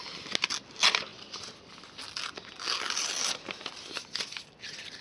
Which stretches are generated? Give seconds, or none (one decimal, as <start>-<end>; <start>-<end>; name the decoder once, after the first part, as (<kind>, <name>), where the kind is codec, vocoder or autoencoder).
none